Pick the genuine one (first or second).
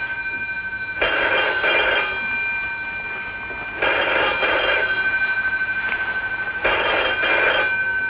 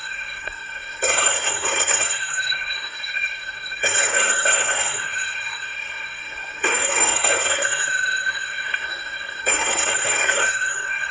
first